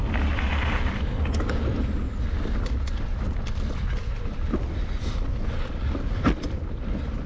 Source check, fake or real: real